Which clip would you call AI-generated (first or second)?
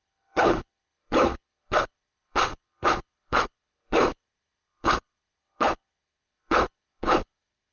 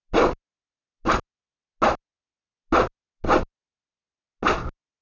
first